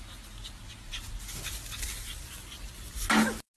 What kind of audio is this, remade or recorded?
recorded